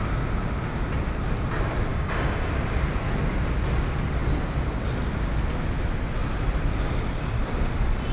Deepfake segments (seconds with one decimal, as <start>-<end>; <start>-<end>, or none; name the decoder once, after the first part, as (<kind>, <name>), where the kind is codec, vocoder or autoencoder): 1.9-2.5 (codec, DAC)